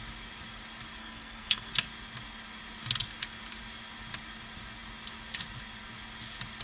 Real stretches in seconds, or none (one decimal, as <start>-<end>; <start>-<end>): 0.0-1.0; 1.7-6.6